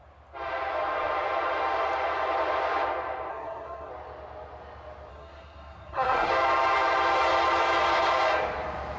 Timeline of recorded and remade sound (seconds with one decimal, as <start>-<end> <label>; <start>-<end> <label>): 0.0-3.3 recorded; 3.3-3.9 remade; 3.9-5.1 recorded; 5.1-6.3 remade; 6.3-9.0 recorded